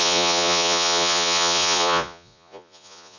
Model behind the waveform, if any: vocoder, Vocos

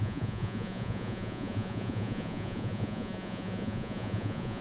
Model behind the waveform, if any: vocoder, Vocos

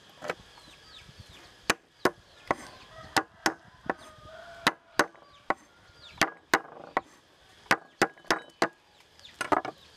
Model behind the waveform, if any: none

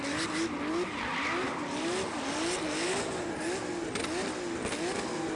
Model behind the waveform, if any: none